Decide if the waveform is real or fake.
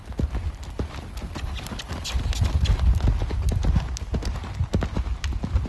real